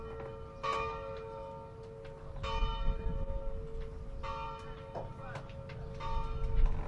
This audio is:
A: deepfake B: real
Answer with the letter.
B